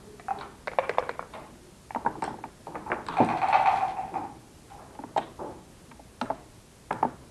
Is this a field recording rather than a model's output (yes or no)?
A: yes